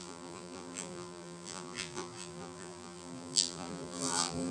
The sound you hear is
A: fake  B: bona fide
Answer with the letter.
A